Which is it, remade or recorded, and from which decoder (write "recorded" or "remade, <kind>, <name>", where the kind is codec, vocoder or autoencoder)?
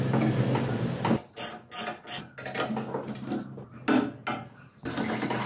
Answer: recorded